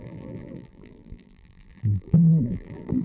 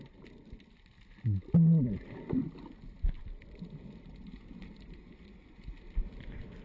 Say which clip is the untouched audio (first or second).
second